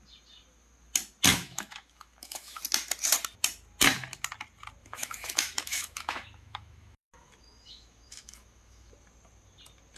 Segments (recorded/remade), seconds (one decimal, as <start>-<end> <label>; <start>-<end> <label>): 0.0-1.3 recorded; 1.3-2.6 remade; 2.6-4.8 recorded; 4.8-8.9 remade; 8.9-10.0 recorded